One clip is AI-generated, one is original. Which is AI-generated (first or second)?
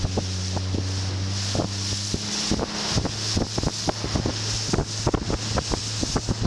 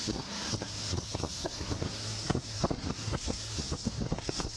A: second